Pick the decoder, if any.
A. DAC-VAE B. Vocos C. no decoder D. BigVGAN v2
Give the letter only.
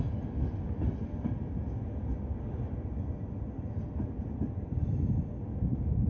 C